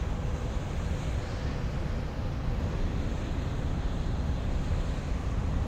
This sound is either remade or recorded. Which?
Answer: recorded